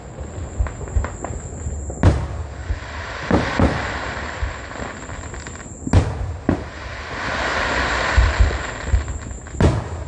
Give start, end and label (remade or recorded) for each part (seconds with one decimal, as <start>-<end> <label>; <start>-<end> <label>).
0.0-2.6 recorded; 2.6-5.3 remade; 5.3-10.1 recorded